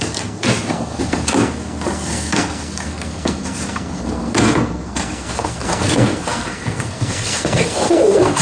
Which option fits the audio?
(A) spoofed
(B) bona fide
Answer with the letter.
A